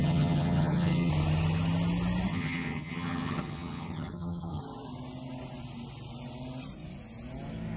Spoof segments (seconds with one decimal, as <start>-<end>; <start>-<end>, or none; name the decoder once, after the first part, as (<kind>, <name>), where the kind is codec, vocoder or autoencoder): 0.0-1.1 (vocoder, HiFi-GAN); 2.3-4.6